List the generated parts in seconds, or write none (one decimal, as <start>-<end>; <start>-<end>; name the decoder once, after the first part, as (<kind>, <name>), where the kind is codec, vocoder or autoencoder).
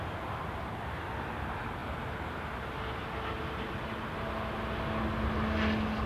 none